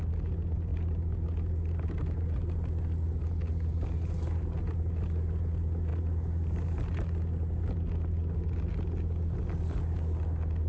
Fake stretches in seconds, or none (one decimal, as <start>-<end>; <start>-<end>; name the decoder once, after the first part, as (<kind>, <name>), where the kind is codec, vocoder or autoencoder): none